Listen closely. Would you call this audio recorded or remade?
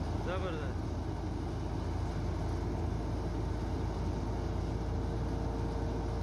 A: recorded